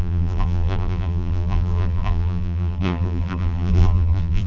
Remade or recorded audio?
remade